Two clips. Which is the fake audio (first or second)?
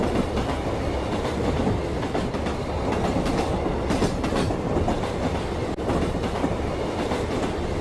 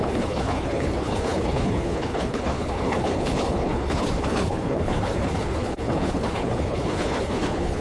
second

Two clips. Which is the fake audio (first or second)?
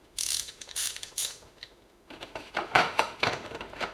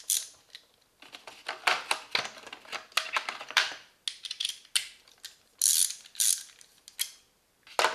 first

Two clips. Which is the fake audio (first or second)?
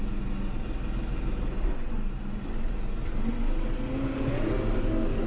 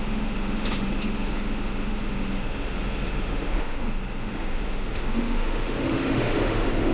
second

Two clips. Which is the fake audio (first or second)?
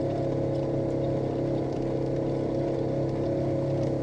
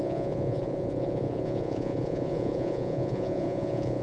second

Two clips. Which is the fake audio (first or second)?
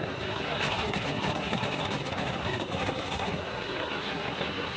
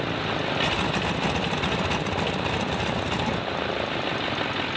first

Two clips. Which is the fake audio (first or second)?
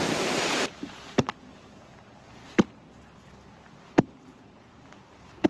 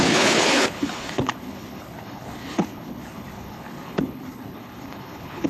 second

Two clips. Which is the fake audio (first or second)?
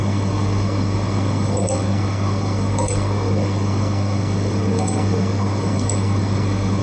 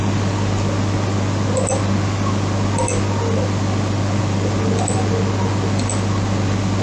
first